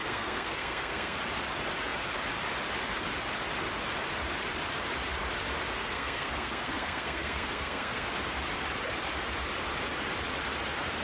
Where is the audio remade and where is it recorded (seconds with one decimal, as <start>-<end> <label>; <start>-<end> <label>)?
0.0-1.2 remade; 1.2-5.8 recorded; 5.8-8.1 remade; 8.1-11.0 recorded